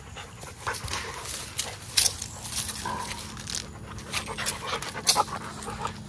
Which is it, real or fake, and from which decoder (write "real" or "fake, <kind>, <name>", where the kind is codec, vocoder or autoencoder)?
real